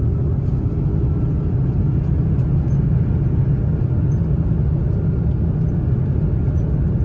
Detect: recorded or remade recorded